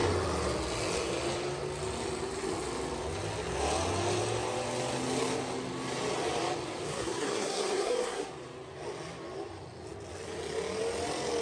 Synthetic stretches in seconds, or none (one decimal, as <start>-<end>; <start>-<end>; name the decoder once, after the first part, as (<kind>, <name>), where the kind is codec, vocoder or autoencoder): 6.9-8.3 (codec, SNAC)